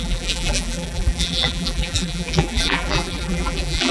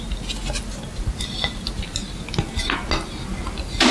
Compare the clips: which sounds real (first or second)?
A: second